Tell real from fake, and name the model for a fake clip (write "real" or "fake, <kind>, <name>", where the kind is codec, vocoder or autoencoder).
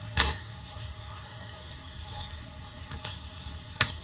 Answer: fake, codec, SNAC